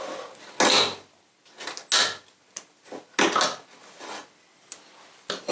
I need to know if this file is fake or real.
real